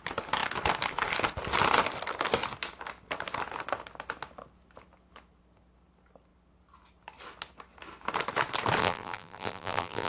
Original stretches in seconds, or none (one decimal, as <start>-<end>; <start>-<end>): 0.0-8.8